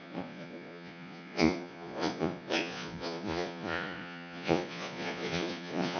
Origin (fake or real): fake